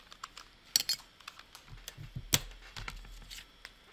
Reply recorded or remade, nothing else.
recorded